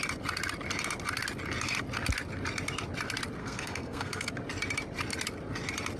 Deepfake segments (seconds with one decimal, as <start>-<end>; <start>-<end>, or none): 3.4-4.3